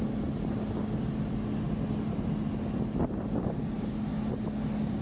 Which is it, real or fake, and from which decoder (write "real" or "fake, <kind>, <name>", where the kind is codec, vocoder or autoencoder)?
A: real